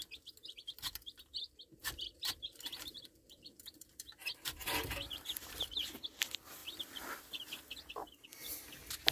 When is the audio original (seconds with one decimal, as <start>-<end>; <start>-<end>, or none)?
0.0-1.8; 5.6-6.6; 7.2-9.1